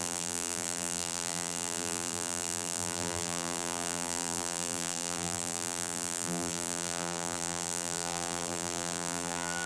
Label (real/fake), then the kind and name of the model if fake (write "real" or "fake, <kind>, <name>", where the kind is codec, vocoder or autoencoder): fake, vocoder, BigVGAN v2